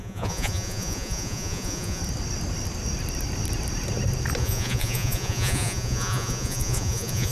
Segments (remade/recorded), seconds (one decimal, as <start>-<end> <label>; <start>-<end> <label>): 0.0-2.0 remade; 2.0-4.4 recorded; 4.4-7.3 remade